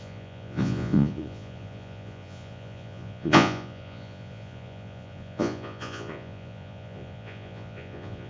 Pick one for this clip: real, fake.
fake